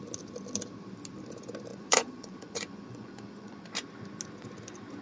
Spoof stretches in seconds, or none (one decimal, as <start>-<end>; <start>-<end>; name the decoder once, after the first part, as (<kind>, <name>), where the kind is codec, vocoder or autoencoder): 1.7-3.7 (vocoder, Vocos)